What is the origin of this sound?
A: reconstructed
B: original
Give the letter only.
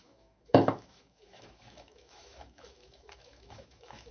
A